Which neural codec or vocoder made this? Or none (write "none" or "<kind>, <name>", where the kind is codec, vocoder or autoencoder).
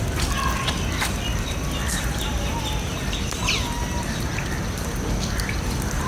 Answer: none